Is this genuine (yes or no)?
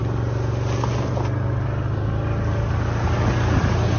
yes